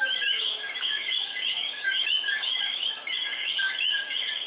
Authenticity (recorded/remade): remade